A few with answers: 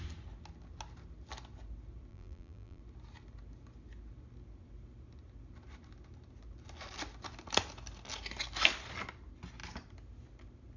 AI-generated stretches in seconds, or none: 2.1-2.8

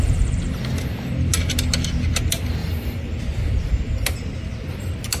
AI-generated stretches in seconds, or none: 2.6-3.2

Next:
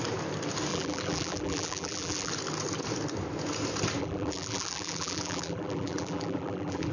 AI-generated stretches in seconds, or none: 0.7-2.3; 4.0-6.9